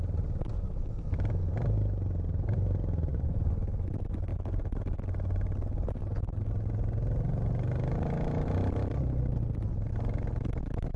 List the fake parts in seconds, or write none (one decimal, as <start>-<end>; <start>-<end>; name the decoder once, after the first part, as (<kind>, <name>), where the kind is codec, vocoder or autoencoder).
3.1-3.6 (vocoder, Vocos)